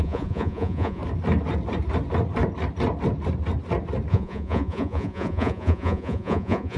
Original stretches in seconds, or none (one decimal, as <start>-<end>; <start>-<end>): 1.0-4.1